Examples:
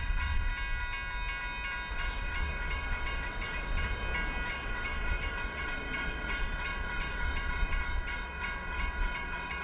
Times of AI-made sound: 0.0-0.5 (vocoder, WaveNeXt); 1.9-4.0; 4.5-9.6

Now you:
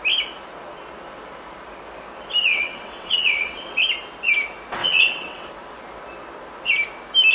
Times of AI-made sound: 2.5-3.8 (vocoder, WaveNeXt); 4.8-5.5

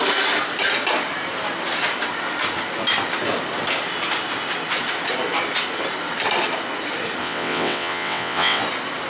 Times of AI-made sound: 7.2-8.6 (vocoder, WaveNeXt)

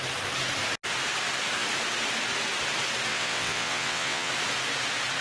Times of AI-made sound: 3.1-4.3 (vocoder, WaveNeXt)

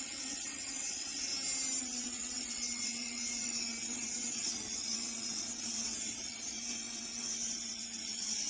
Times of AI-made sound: 0.0-1.3 (vocoder, WaveNeXt); 1.8-8.5

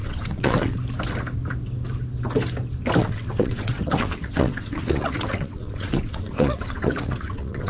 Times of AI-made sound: 0.0-0.8 (vocoder, WaveNeXt); 3.0-7.7